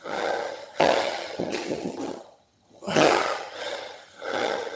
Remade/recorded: remade